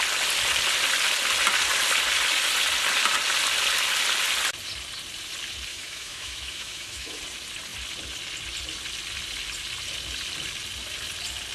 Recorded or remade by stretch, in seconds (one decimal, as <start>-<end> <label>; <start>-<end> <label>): 0.0-5.7 recorded; 5.7-7.2 remade; 7.2-11.5 recorded